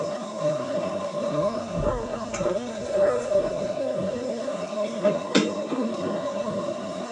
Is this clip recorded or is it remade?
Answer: remade